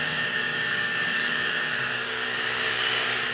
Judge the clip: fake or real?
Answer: fake